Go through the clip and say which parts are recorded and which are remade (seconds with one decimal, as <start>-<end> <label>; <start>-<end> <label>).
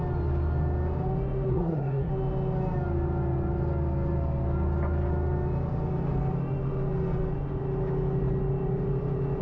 0.0-1.5 recorded; 1.5-2.1 remade; 2.1-9.4 recorded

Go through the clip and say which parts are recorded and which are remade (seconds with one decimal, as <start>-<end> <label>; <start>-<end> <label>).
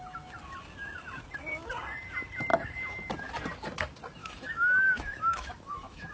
0.0-2.5 recorded; 2.5-3.1 remade; 3.1-4.2 recorded; 4.2-6.1 remade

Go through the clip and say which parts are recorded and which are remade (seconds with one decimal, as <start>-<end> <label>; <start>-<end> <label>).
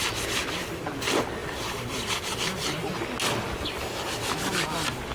0.0-5.1 recorded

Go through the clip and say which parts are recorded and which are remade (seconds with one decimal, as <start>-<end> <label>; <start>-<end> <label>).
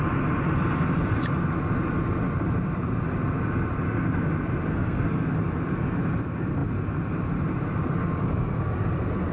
0.0-4.7 recorded; 4.7-5.3 remade; 5.3-9.3 recorded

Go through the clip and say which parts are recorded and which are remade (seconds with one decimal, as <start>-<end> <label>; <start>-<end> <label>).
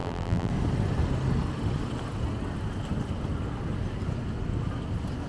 0.0-0.5 remade; 0.5-5.3 recorded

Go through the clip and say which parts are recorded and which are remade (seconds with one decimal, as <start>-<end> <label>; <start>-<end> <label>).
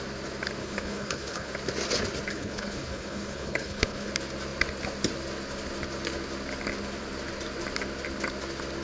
0.0-0.6 recorded; 0.6-1.5 remade; 1.5-2.3 recorded; 2.3-4.1 remade; 4.1-8.8 recorded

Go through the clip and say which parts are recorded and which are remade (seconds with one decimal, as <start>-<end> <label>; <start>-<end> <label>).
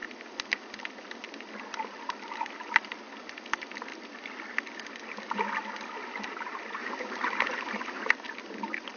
0.0-6.8 recorded; 6.8-8.1 remade; 8.1-9.0 recorded